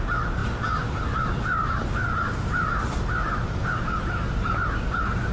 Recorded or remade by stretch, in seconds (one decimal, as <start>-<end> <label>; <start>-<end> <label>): 0.0-5.3 recorded